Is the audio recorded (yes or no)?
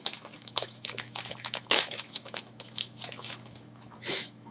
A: no